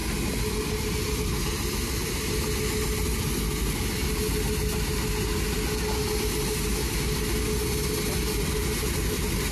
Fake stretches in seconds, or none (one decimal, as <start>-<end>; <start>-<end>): none